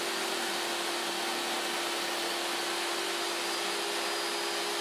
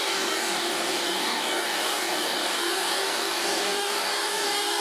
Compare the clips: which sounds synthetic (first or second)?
second